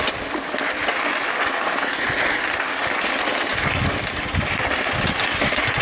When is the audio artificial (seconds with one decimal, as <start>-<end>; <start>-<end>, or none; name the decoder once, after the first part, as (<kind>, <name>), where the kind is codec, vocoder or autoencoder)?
none